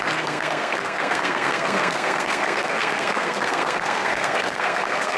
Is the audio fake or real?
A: fake